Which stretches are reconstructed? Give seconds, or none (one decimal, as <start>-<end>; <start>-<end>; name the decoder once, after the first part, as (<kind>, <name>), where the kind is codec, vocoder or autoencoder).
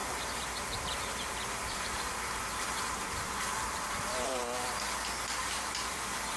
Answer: 0.0-4.4 (vocoder, BigVGAN v2); 5.4-6.4